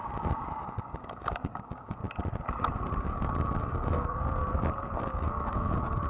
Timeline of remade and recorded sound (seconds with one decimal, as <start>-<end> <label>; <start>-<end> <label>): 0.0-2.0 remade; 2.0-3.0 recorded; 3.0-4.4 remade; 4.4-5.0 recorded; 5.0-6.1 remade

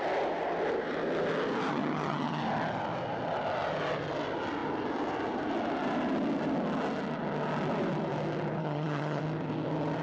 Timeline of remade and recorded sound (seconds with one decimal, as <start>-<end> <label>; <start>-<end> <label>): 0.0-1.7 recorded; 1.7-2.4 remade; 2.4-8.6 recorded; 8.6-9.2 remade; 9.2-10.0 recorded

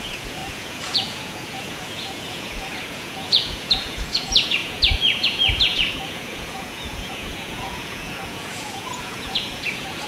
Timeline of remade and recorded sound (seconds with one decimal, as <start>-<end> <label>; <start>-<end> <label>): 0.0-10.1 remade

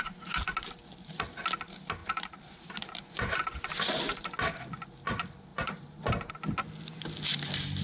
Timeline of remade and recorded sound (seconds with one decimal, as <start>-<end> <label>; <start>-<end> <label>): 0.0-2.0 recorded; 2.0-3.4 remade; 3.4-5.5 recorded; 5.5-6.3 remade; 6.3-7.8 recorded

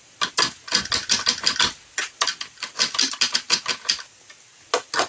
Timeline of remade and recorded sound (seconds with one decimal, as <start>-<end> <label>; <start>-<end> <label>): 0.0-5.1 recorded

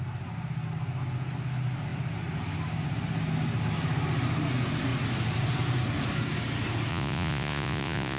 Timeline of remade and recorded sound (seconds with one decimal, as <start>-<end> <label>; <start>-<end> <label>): 0.0-6.9 recorded; 6.9-8.2 remade

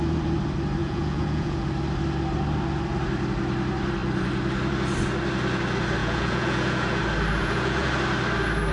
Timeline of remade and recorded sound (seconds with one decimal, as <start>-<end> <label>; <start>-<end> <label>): 0.0-0.8 recorded; 0.8-1.6 remade; 1.6-6.0 recorded; 6.0-7.0 remade; 7.0-7.4 recorded; 7.4-7.9 remade; 7.9-8.7 recorded

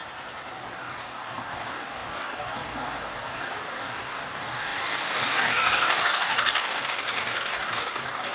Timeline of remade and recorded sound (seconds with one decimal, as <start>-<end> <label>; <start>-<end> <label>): 0.0-0.8 recorded; 0.8-8.3 remade